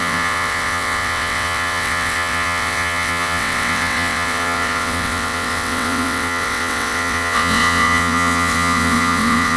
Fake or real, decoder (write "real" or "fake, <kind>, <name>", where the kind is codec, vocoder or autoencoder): fake, vocoder, WaveNeXt